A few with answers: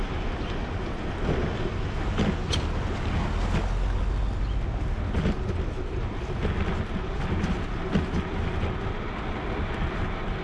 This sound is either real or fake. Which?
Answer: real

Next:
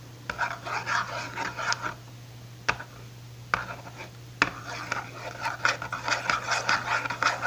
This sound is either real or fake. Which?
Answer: real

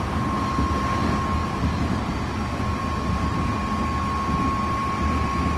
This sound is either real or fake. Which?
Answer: real